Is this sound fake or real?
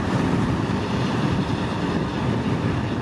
fake